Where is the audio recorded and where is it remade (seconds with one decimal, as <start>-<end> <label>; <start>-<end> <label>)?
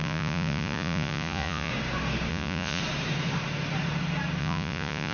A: 0.0-1.7 remade; 1.7-2.3 recorded; 2.3-2.8 remade; 2.8-4.4 recorded; 4.4-5.1 remade